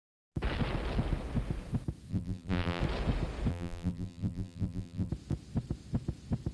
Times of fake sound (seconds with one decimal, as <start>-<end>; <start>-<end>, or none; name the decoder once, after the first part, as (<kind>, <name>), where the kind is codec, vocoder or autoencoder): 2.1-2.8 (vocoder, BigVGAN v2); 3.5-5.1